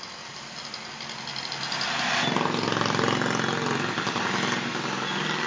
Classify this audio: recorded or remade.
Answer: recorded